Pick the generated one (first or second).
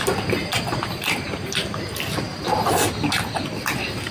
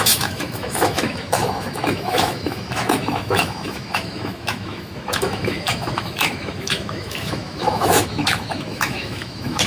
second